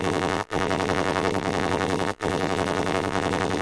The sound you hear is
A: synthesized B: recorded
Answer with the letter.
A